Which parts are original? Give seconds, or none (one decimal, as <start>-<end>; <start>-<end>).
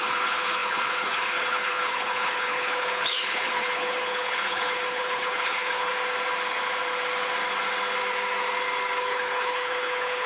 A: 5.9-9.0